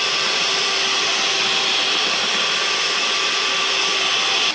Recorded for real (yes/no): yes